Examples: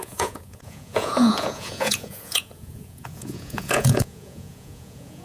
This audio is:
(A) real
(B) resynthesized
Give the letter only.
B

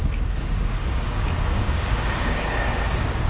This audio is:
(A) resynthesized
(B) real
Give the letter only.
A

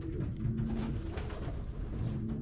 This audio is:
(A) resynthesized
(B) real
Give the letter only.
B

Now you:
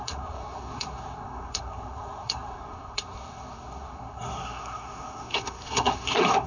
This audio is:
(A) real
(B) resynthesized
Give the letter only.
B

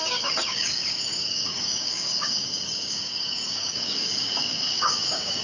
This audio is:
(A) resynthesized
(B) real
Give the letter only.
A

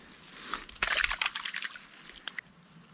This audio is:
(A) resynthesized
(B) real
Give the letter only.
B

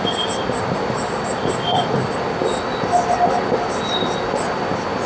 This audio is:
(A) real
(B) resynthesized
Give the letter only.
A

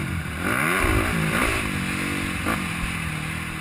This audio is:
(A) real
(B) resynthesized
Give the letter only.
A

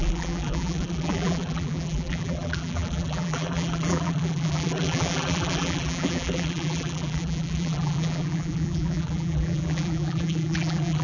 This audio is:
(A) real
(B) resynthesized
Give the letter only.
B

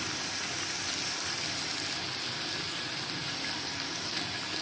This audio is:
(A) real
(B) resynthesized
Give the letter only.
A